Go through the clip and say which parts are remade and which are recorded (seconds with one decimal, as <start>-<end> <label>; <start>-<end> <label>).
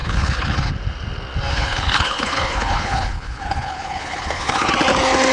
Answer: 0.0-0.7 remade; 0.7-1.5 recorded; 1.5-4.7 remade; 4.7-5.3 recorded